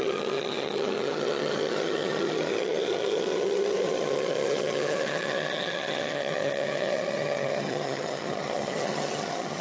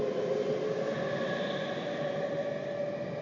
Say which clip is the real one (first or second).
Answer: second